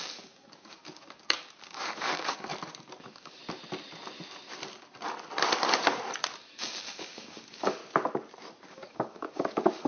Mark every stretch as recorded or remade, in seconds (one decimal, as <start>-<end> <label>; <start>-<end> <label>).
0.0-2.5 remade; 2.5-3.0 recorded; 3.0-3.4 remade; 3.4-6.4 recorded; 6.4-7.8 remade; 7.8-8.7 recorded; 8.7-9.9 remade